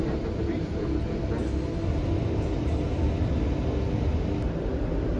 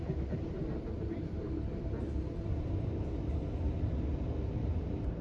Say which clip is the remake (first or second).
second